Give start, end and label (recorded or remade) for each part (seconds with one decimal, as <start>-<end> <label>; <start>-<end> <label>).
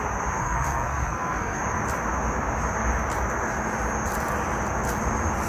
0.0-0.4 recorded; 0.4-1.6 remade; 1.6-5.5 recorded